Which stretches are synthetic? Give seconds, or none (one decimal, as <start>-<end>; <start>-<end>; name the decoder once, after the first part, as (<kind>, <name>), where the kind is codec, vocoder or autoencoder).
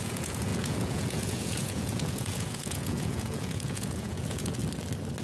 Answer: 0.0-4.6 (vocoder, Vocos)